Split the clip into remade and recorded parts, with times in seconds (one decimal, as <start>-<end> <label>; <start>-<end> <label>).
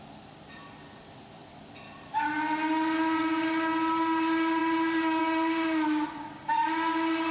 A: 0.0-7.3 recorded